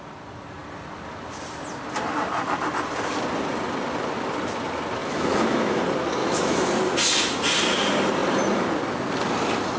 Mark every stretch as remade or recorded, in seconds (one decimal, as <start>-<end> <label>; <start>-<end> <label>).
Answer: 0.0-5.0 recorded; 5.0-5.8 remade; 5.8-6.2 recorded; 6.2-6.7 remade; 6.7-9.8 recorded